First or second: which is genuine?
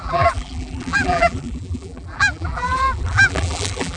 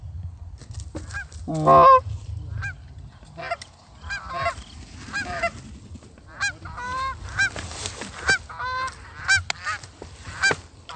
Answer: second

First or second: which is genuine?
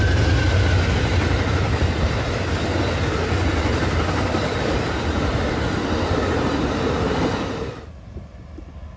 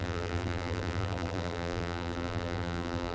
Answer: first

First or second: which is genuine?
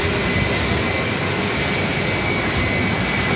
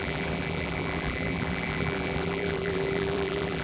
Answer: first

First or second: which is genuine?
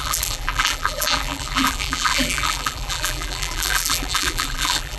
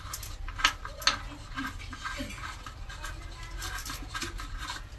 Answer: second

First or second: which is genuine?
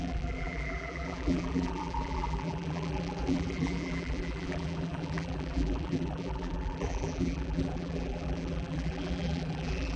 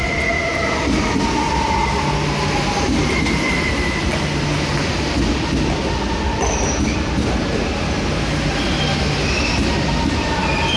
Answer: second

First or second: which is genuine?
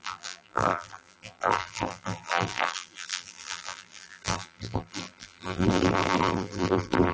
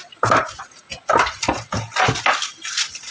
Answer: second